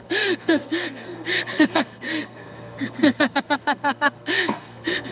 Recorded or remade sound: remade